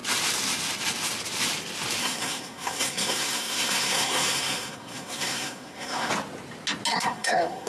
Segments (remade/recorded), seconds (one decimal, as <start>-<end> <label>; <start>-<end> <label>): 0.0-2.0 recorded; 2.0-6.1 remade; 6.1-6.9 recorded; 6.9-7.7 remade